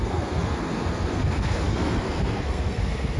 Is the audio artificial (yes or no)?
yes